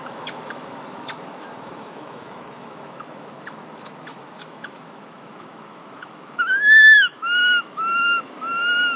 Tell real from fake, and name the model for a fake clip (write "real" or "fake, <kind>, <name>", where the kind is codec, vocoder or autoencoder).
fake, autoencoder, DAC-VAE